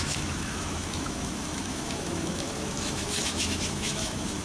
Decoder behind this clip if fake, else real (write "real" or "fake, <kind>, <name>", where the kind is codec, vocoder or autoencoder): fake, autoencoder, DAC-VAE